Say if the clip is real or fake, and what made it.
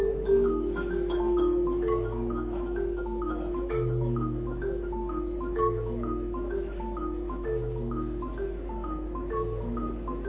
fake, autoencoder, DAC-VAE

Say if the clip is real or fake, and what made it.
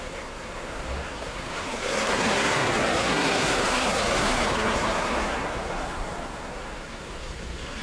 fake, codec, SNAC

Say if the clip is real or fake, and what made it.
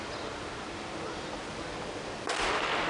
real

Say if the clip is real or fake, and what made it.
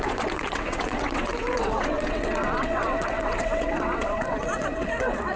fake, vocoder, WaveNeXt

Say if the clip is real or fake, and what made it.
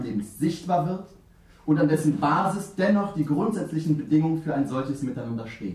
real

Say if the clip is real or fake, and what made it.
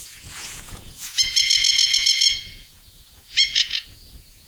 fake, vocoder, Vocos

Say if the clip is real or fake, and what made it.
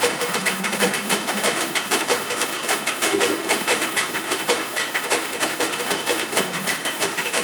fake, autoencoder, DAC-VAE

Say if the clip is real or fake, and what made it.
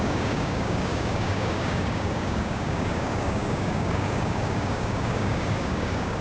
fake, codec, DAC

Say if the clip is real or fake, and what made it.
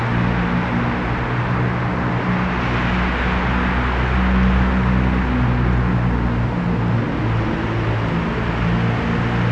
real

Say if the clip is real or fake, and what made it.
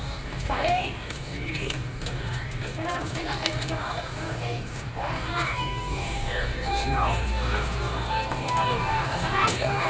fake, codec, DAC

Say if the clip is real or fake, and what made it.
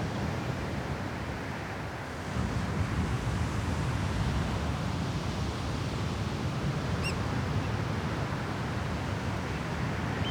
real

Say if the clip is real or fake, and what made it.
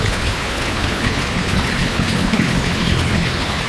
fake, codec, HILCodec